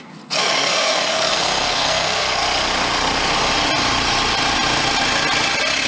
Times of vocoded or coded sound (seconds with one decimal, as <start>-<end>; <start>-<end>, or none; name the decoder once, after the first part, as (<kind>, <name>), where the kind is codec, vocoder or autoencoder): 0.0-2.4 (codec, SNAC)